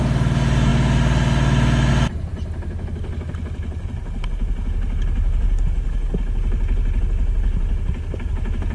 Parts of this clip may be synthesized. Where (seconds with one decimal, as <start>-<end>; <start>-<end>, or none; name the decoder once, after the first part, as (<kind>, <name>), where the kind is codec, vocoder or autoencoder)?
none